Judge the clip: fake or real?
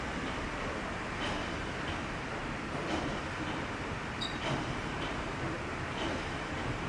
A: fake